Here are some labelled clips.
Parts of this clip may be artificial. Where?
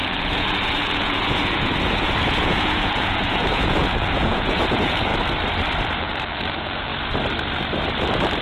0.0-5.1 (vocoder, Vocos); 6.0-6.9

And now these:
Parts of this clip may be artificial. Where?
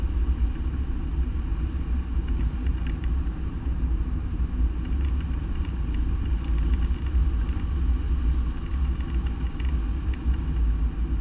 1.5-4.5 (vocoder, BigVGAN v2)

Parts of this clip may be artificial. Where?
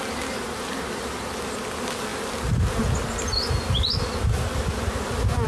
none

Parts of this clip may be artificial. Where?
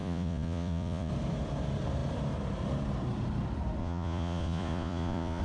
0.0-1.1 (vocoder, Vocos); 3.8-5.4